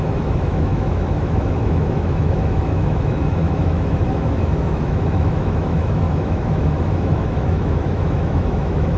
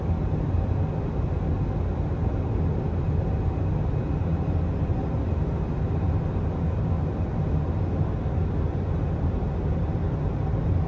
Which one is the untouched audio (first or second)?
second